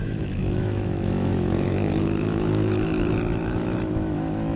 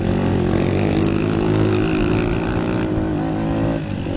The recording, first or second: second